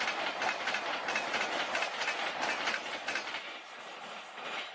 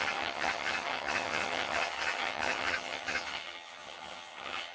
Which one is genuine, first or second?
first